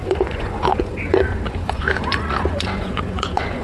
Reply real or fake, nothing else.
fake